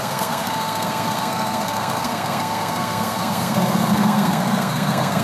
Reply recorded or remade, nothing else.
remade